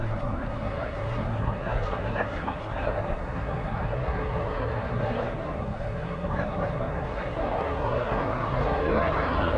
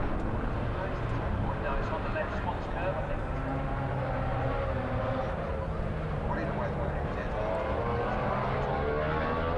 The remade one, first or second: first